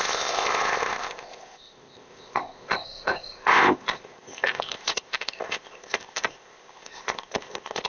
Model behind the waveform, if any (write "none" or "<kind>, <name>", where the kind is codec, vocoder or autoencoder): codec, ZipCodec